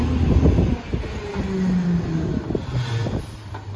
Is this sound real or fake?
real